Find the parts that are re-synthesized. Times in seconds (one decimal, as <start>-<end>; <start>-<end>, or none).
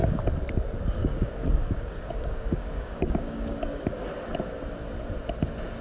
1.0-4.1